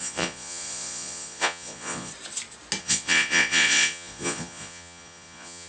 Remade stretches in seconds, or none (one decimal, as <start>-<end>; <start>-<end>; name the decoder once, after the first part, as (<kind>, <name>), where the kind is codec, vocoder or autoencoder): 0.0-2.1 (vocoder, Vocos); 2.8-5.7